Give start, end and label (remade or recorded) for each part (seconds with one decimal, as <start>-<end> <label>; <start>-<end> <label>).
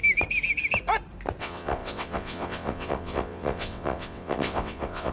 0.0-1.4 recorded; 1.4-5.1 remade